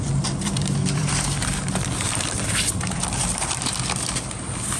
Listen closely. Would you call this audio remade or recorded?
remade